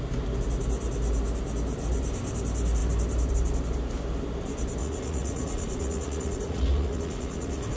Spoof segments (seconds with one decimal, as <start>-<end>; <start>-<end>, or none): 4.8-7.8